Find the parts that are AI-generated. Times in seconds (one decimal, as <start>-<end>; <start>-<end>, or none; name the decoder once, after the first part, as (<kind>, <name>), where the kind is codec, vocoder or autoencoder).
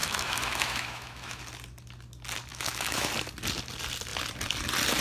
0.0-1.4 (autoencoder, DAC-VAE); 2.5-3.1